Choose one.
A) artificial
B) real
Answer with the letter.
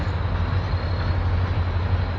B